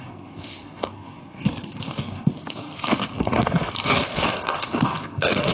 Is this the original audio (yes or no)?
no